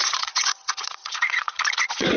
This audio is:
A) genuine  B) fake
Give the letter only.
B